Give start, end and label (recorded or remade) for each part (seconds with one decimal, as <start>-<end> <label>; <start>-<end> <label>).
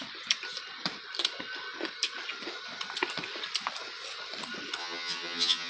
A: 0.0-4.8 recorded; 4.8-5.7 remade